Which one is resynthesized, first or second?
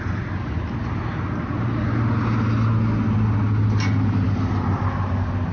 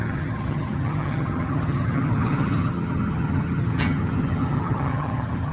second